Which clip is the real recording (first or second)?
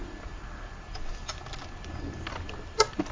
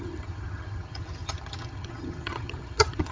first